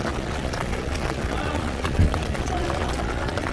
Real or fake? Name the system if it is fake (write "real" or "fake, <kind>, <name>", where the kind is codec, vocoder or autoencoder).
fake, vocoder, Vocos